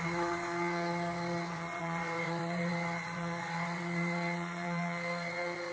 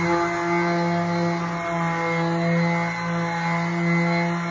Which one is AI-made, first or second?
first